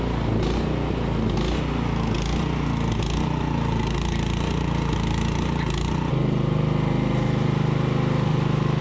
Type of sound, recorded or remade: recorded